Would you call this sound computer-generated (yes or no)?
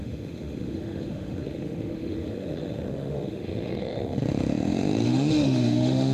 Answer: yes